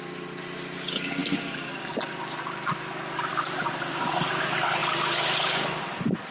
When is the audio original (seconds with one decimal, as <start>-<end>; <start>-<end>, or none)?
0.0-6.3